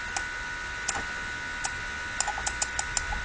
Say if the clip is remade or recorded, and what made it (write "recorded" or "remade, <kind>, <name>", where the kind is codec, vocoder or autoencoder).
recorded